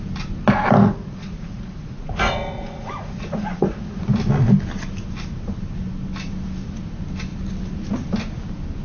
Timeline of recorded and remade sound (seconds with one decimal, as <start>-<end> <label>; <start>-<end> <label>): 0.0-0.8 recorded; 0.8-4.0 remade; 4.0-8.8 recorded